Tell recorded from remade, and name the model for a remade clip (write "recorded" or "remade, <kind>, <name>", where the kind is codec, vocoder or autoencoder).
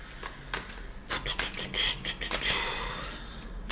recorded